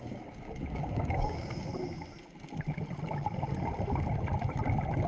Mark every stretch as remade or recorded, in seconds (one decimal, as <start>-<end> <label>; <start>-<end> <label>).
0.0-1.7 remade; 1.7-5.1 recorded

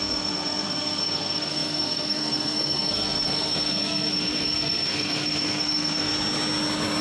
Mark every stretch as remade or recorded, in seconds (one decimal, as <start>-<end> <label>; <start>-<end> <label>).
0.0-6.1 remade; 6.1-7.0 recorded